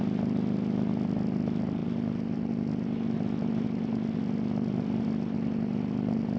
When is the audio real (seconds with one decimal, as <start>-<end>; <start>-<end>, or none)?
0.0-6.4